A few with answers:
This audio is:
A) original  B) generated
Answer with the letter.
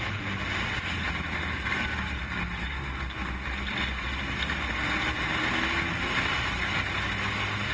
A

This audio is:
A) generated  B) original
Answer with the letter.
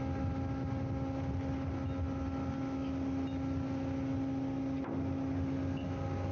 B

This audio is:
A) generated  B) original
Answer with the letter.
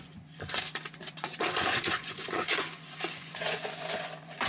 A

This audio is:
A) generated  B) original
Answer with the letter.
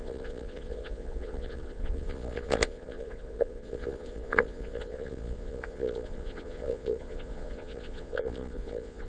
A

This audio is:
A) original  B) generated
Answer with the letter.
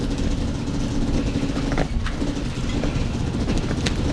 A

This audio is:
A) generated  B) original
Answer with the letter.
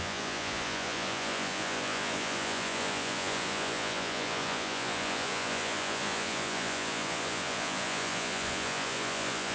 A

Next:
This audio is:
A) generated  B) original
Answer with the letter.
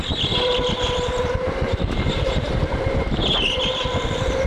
B